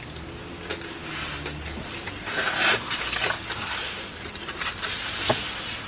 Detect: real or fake real